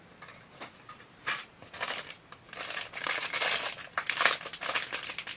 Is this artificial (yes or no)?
no